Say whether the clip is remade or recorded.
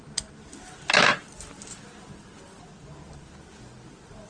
recorded